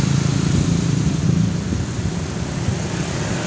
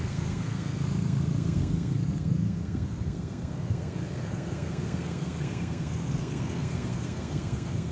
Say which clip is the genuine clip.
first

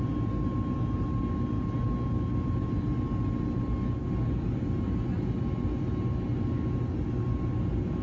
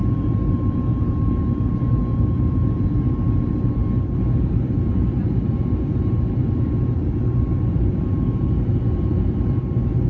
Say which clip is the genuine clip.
first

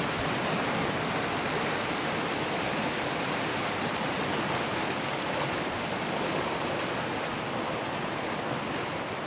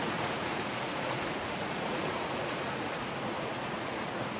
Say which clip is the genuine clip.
first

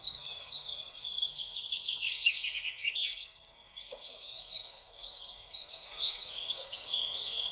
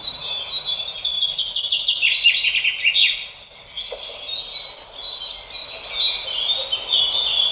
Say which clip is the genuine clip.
second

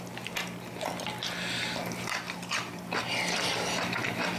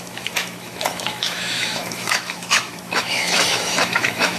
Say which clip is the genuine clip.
first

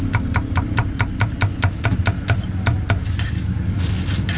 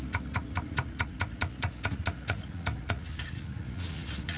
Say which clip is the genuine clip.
first